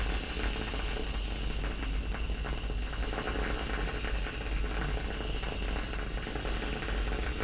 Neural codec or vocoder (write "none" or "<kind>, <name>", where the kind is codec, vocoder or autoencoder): none